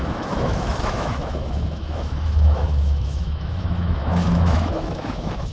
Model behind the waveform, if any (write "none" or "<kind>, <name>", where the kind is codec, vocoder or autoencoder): autoencoder, DAC-VAE